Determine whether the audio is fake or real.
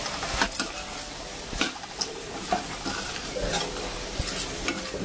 real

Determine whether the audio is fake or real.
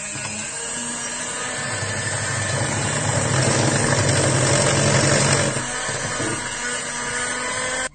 real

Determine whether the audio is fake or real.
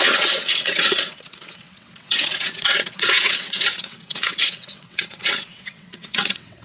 fake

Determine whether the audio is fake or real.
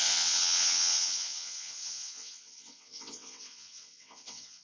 fake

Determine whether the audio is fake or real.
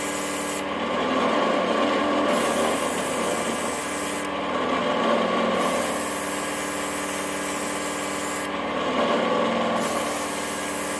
real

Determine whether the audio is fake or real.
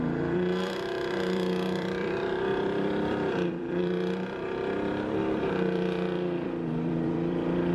fake